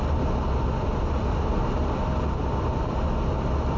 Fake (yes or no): no